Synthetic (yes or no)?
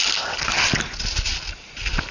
no